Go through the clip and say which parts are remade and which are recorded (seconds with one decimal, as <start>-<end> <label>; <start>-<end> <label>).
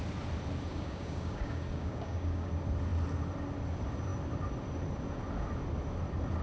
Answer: 0.0-0.7 recorded; 0.7-2.5 remade; 2.5-6.4 recorded